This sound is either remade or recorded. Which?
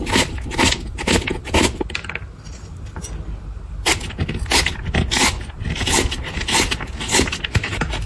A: recorded